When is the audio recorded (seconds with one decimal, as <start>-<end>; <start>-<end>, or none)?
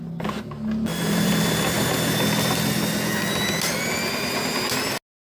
0.0-0.9; 1.9-5.3